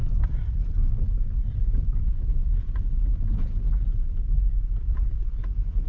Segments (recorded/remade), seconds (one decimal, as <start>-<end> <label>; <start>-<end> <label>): 0.0-2.3 recorded; 2.3-3.9 remade; 3.9-4.7 recorded; 4.7-5.9 remade